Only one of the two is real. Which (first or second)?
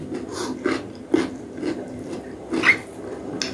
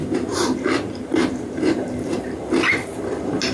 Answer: first